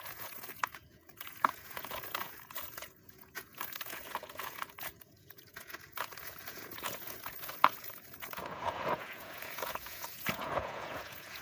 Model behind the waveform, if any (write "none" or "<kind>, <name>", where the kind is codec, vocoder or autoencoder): vocoder, Vocos